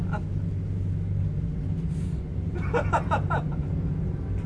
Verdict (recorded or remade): recorded